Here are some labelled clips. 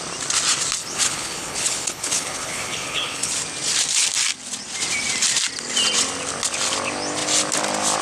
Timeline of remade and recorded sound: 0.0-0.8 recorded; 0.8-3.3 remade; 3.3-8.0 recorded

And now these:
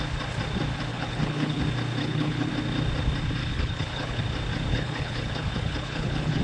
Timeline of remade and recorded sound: 0.0-0.9 recorded; 0.9-1.6 remade; 1.6-2.0 recorded; 2.0-2.5 remade; 2.5-3.4 recorded; 3.4-4.2 remade; 4.2-4.7 recorded; 4.7-6.4 remade

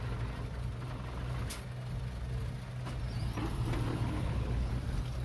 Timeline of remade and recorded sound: 0.0-3.9 recorded; 3.9-4.7 remade; 4.7-5.2 recorded

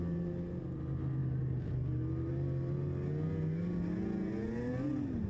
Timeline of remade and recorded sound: 0.0-5.3 recorded

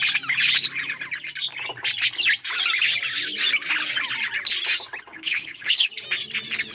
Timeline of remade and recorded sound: 0.0-5.1 recorded; 5.1-5.9 remade; 5.9-6.7 recorded

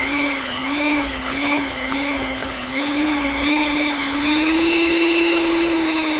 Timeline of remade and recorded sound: 0.0-6.2 remade